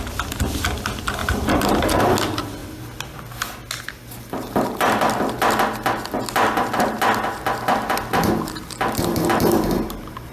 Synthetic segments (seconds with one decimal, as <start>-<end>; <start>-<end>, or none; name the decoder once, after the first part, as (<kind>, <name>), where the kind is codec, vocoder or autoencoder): 1.2-2.0 (vocoder, BigVGAN v2)